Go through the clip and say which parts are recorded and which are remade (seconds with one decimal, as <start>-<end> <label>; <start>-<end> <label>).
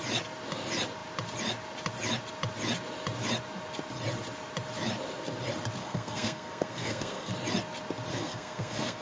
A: 0.0-5.8 recorded; 5.8-7.3 remade; 7.3-8.1 recorded; 8.1-9.0 remade